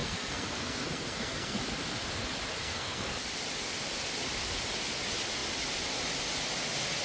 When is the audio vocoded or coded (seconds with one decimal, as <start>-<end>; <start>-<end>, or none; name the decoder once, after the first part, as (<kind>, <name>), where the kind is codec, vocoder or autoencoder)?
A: 0.0-1.6 (codec, SNAC); 2.6-3.1

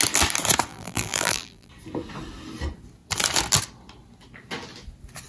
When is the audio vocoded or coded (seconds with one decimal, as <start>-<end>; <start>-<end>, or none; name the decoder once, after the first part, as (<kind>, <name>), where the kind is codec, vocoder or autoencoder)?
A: 0.7-1.7 (vocoder, BigVGAN v2)